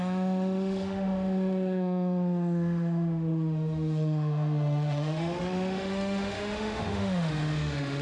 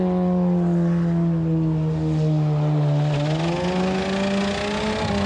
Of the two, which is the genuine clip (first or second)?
second